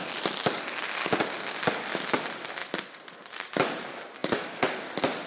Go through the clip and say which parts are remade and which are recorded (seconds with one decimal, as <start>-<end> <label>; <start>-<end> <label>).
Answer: 0.0-2.6 recorded; 2.6-3.8 remade; 3.8-4.2 recorded; 4.2-4.7 remade; 4.7-5.3 recorded

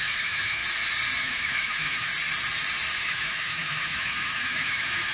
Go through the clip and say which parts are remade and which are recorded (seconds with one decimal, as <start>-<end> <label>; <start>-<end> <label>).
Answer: 0.0-0.6 remade; 0.6-1.2 recorded; 1.2-2.1 remade; 2.1-2.9 recorded; 2.9-5.1 remade

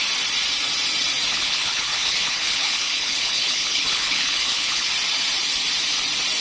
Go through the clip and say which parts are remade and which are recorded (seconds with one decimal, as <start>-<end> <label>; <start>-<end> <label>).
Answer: 0.0-1.3 recorded; 1.3-4.9 remade; 4.9-6.4 recorded

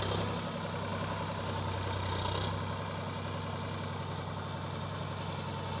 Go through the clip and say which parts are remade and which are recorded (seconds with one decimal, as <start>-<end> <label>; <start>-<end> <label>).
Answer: 0.0-5.8 recorded

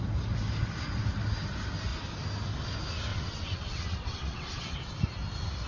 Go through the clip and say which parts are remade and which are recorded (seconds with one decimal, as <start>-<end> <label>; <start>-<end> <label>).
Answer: 0.0-3.1 recorded; 3.1-4.9 remade; 4.9-5.7 recorded

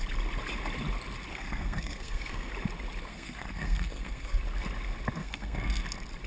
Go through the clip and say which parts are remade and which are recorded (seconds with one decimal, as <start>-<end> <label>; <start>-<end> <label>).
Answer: 0.0-1.3 recorded; 1.3-2.5 remade; 2.5-3.1 recorded; 3.1-4.4 remade; 4.4-5.2 recorded; 5.2-5.8 remade; 5.8-6.3 recorded

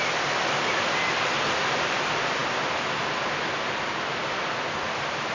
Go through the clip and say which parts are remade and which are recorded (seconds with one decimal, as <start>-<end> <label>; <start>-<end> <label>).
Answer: 0.0-5.3 recorded

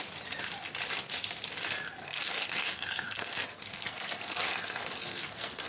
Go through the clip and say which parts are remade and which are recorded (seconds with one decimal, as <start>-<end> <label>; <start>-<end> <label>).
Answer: 0.0-2.0 recorded; 2.0-5.7 remade